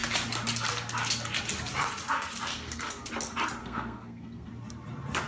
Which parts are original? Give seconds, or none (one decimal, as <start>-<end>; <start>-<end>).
0.0-2.5; 3.1-3.6; 4.5-5.3